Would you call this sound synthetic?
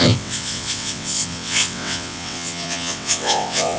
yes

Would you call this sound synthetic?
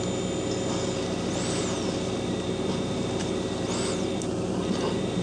no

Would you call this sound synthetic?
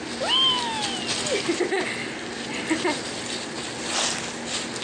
no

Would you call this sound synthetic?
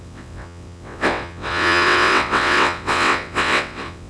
yes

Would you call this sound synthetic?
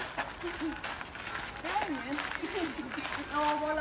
no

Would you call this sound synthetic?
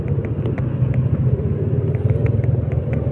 no